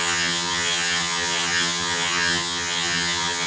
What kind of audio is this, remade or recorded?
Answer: remade